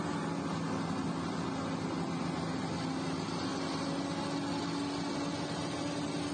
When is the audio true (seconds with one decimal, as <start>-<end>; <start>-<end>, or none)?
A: 0.0-6.3